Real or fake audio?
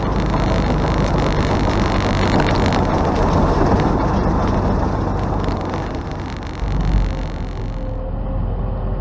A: real